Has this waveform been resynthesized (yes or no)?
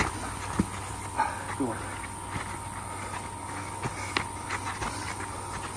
no